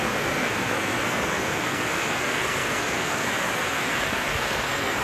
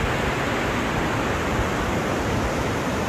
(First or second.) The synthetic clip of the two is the first